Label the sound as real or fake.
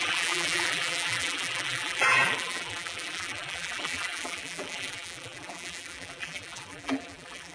fake